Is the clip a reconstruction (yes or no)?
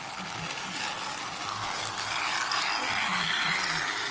no